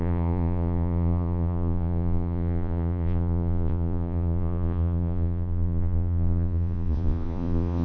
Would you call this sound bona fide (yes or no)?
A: no